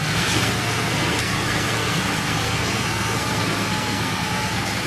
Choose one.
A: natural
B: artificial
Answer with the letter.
B